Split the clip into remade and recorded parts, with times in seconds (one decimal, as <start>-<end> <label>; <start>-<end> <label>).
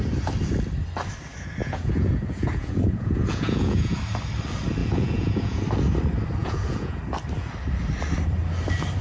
0.0-1.6 recorded; 1.6-4.0 remade; 4.0-4.8 recorded; 4.8-5.6 remade; 5.6-6.4 recorded; 6.4-7.0 remade; 7.0-9.0 recorded